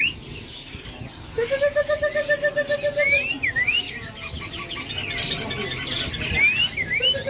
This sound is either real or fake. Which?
real